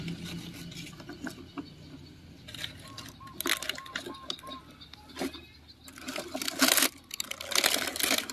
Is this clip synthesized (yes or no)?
no